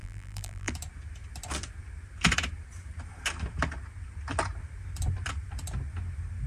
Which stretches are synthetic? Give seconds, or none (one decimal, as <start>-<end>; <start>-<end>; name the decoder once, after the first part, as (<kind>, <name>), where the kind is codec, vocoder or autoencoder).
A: 0.0-0.7 (vocoder, BigVGAN v2)